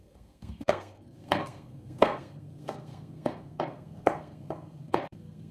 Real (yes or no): no